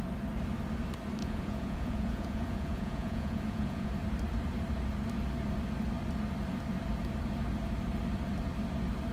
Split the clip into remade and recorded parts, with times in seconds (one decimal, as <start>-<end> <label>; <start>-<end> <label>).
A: 0.0-1.2 recorded; 1.2-3.9 remade; 3.9-9.1 recorded

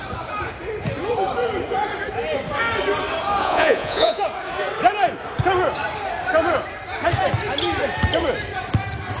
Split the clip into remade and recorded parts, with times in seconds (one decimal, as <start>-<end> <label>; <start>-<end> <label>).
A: 0.0-3.4 recorded; 3.4-4.2 remade; 4.2-9.2 recorded

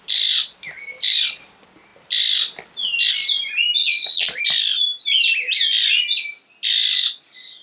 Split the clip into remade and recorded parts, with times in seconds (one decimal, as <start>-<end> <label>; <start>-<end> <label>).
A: 0.0-3.8 recorded; 3.8-4.4 remade; 4.4-7.6 recorded